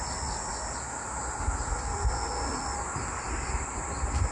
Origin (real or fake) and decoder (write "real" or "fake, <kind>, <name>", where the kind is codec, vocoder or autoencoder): real